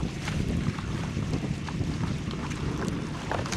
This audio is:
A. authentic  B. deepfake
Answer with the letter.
B